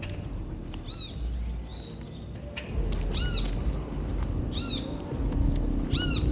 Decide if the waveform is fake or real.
real